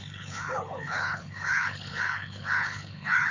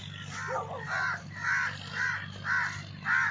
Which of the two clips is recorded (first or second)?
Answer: second